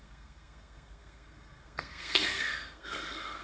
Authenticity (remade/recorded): remade